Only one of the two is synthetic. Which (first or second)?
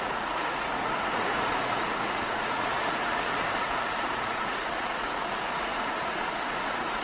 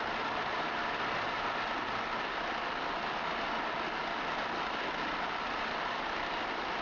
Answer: first